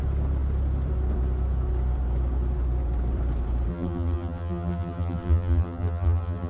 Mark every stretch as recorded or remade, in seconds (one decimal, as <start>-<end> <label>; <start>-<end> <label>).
0.0-3.7 recorded; 3.7-6.5 remade